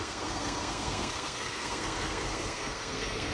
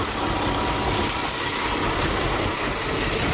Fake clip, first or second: first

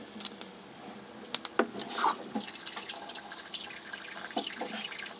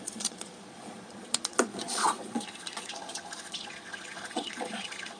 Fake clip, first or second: second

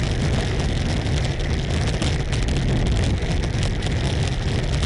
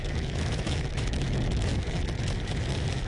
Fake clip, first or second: second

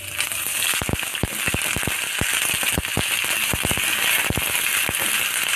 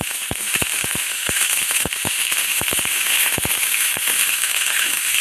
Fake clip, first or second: second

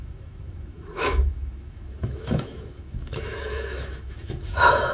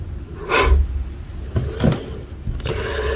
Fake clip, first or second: first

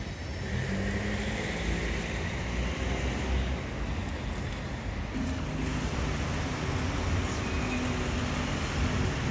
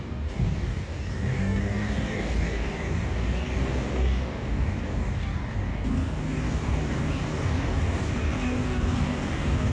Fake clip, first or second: second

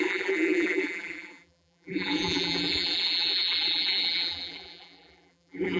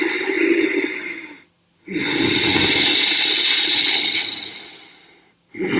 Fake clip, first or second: first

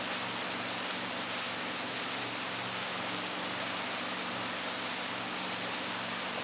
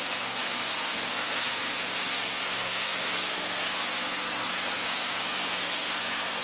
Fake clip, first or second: second